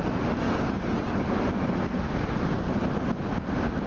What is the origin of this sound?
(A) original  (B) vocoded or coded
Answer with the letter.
A